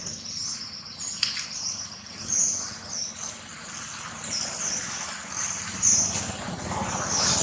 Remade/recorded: recorded